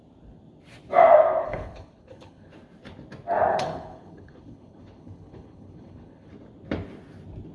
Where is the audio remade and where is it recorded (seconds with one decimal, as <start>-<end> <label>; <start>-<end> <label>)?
0.0-1.4 recorded; 1.4-2.5 remade; 2.5-3.5 recorded; 3.5-6.3 remade; 6.3-7.5 recorded